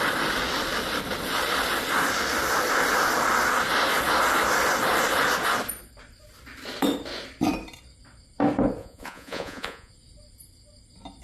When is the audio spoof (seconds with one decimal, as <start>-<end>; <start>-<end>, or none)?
8.8-9.9